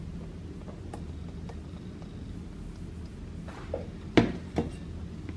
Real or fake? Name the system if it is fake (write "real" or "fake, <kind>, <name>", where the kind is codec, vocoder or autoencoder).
real